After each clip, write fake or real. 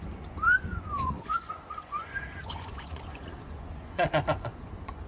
fake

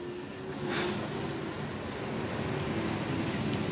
real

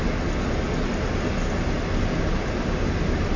real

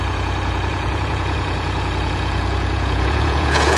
fake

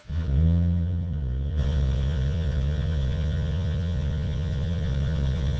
fake